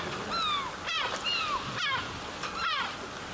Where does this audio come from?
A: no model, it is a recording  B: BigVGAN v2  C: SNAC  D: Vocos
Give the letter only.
A